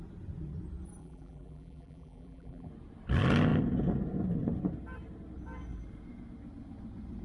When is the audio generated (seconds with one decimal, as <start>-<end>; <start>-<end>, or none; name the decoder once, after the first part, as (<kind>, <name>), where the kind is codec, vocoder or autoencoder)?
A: 1.0-2.7 (vocoder, BigVGAN v2)